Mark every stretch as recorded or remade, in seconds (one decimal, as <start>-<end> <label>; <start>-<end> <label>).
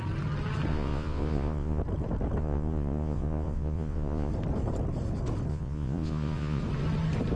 0.0-0.7 recorded; 0.7-1.8 remade; 1.8-2.4 recorded; 2.4-4.3 remade; 4.3-5.5 recorded; 5.5-6.6 remade; 6.6-7.4 recorded